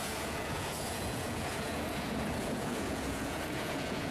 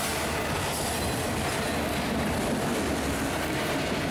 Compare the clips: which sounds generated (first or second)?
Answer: first